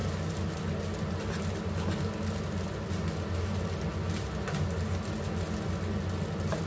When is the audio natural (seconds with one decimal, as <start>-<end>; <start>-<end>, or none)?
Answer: 0.0-6.7